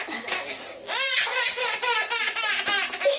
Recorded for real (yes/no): no